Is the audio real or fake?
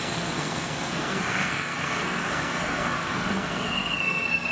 fake